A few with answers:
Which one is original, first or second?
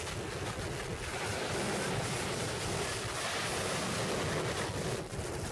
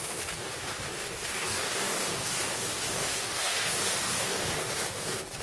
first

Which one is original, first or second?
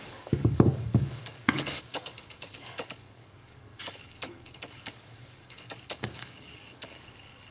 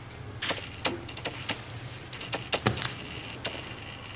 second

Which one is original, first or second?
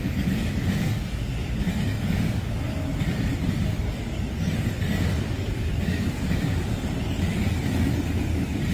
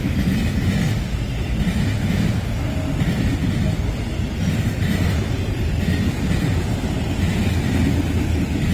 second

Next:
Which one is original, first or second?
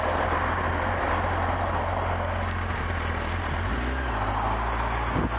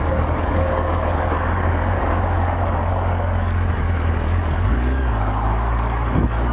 first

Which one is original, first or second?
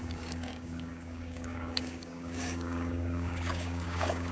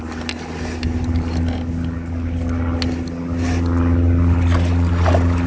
second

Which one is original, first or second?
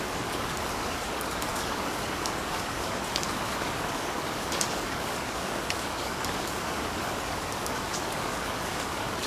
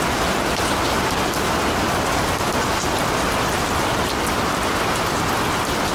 second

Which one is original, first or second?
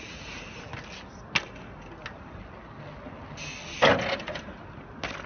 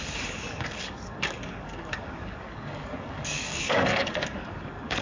first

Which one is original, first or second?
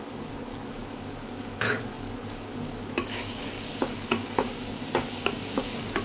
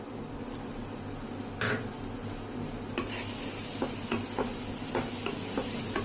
second